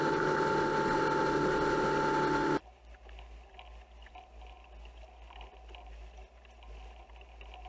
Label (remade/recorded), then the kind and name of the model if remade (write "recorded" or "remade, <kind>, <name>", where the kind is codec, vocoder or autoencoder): recorded